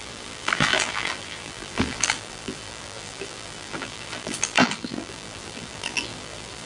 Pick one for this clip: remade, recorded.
remade